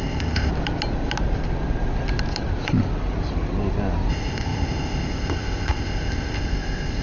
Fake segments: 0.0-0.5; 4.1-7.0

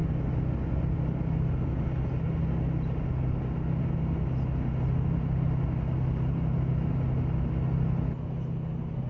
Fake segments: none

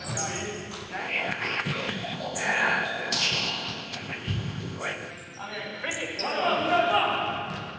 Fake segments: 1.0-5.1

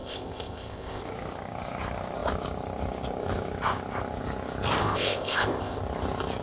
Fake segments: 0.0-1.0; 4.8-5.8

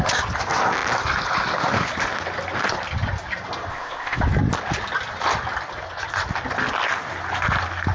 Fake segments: 3.7-4.2